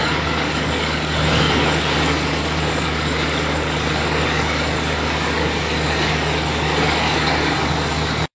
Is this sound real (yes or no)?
no